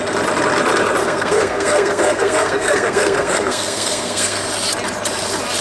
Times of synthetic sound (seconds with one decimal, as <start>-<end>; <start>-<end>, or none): 1.0-4.4